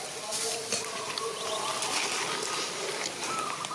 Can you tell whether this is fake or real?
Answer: real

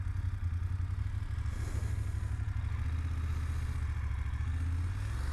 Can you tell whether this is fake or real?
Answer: real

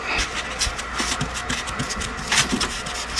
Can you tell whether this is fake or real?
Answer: real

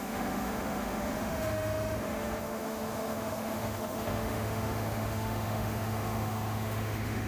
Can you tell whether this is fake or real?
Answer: fake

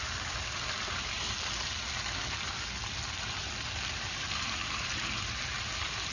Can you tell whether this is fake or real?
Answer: real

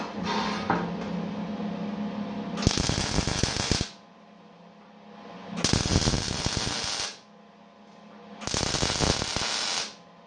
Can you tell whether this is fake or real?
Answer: real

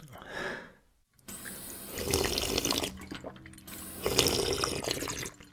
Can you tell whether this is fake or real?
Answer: real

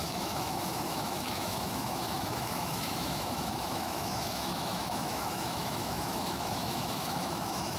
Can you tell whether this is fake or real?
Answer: fake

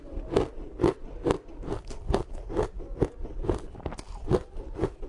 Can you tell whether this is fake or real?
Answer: real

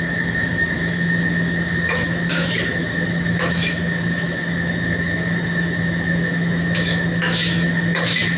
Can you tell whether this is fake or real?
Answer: fake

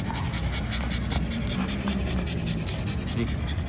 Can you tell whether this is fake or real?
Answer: real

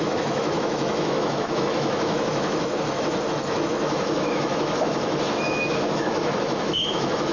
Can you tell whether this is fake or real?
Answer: fake